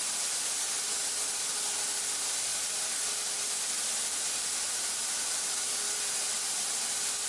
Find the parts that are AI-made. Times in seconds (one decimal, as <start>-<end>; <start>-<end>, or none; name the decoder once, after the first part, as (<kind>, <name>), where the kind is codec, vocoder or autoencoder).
none